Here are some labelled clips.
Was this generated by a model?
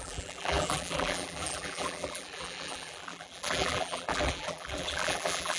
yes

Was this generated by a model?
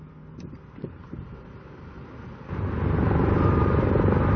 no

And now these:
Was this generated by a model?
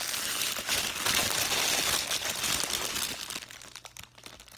no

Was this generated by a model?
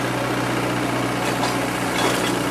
no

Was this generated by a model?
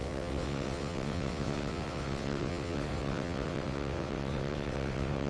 yes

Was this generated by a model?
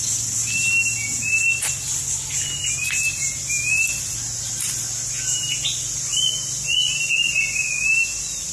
no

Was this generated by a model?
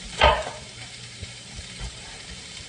yes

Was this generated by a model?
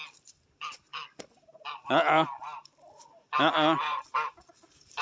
no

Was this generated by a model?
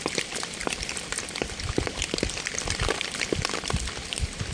yes